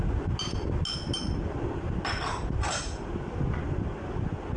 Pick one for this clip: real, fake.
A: real